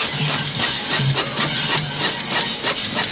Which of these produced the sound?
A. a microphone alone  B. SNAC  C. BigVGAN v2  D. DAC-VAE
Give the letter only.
A